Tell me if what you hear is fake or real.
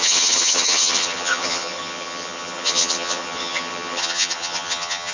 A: fake